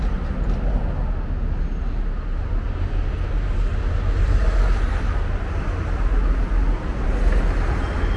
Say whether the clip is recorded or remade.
recorded